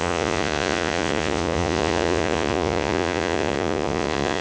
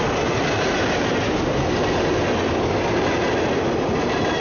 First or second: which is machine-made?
first